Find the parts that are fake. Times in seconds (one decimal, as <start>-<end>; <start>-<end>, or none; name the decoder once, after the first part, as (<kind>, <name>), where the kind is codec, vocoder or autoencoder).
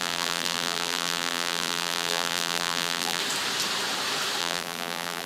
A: 0.0-3.2 (vocoder, BigVGAN v2); 4.4-5.3